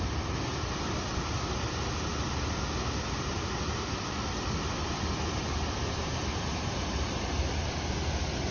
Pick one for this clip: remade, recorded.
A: recorded